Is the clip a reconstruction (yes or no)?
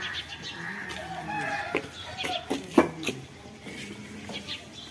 no